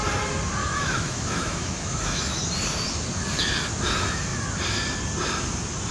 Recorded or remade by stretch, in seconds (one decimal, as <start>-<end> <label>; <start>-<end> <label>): 0.0-0.6 recorded; 0.6-2.4 remade; 2.4-5.9 recorded